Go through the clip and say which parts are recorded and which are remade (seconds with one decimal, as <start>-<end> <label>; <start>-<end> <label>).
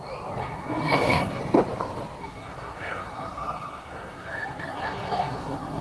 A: 0.0-0.4 recorded; 0.4-1.4 remade; 1.4-2.2 recorded; 2.2-5.8 remade